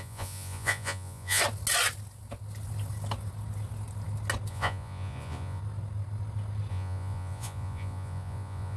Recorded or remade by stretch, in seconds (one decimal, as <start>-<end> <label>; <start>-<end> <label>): 0.0-1.4 remade; 1.4-4.5 recorded; 4.5-5.6 remade; 5.6-6.7 recorded; 6.7-8.8 remade